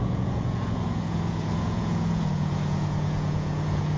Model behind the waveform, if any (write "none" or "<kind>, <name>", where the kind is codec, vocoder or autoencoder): vocoder, Vocos